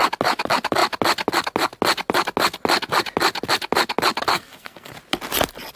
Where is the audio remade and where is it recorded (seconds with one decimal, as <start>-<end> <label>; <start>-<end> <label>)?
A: 0.0-4.3 recorded; 4.3-4.9 remade; 4.9-5.8 recorded